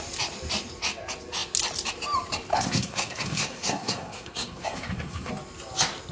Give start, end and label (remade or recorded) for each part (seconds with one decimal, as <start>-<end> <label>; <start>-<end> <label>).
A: 0.0-2.5 recorded; 2.5-5.3 remade; 5.3-6.1 recorded